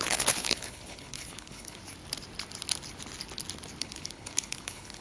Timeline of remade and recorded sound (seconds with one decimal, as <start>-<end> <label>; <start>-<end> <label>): 0.0-1.8 remade; 1.8-3.8 recorded; 3.8-5.0 remade